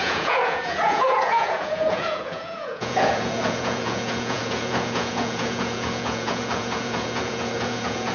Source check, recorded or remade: remade